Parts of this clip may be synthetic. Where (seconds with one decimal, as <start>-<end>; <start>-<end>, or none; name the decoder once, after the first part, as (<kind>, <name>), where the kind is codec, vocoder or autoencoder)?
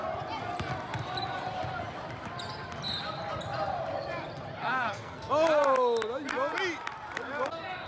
4.6-5.3 (codec, SNAC)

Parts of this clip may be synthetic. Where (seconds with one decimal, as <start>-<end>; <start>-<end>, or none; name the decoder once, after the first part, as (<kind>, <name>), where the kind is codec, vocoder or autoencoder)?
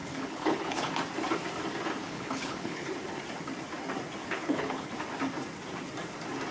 0.0-0.9 (codec, HILCodec); 2.0-2.9; 4.2-4.9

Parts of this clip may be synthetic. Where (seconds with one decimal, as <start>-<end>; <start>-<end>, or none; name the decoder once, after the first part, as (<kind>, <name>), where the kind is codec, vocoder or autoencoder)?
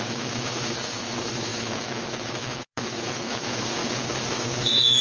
0.0-5.0 (autoencoder, DAC-VAE)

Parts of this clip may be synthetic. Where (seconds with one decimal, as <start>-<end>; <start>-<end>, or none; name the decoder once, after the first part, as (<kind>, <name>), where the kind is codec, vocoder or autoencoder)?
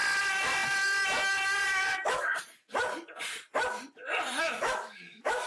1.7-2.3 (autoencoder, DAC-VAE); 4.4-5.5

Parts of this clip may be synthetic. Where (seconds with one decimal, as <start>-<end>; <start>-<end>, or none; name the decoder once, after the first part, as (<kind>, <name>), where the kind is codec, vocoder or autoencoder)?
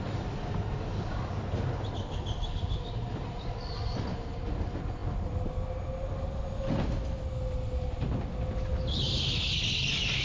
none